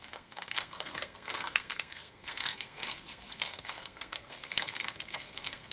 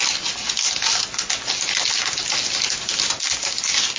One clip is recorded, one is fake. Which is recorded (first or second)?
second